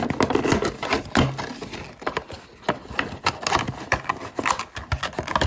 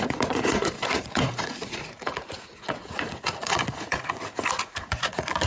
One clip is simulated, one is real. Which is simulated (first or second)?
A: second